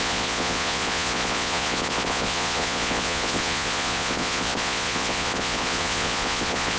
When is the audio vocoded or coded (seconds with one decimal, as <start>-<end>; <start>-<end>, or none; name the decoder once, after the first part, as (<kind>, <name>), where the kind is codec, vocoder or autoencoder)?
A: 0.0-6.8 (vocoder, Vocos)